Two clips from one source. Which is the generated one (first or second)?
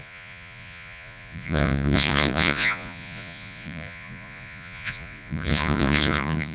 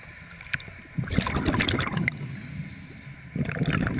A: first